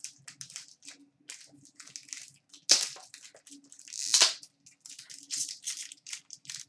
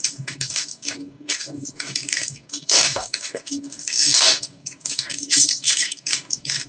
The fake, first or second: second